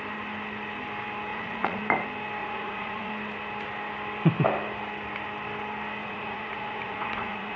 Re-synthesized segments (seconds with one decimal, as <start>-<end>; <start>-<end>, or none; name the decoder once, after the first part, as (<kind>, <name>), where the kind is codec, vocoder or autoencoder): 1.3-1.8 (vocoder, Vocos); 2.4-3.1; 6.0-7.6